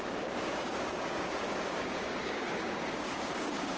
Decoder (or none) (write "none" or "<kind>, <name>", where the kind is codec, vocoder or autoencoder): codec, DAC